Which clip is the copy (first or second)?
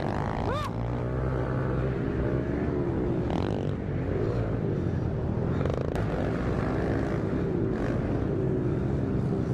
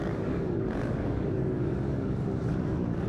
second